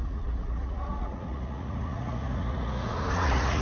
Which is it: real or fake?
fake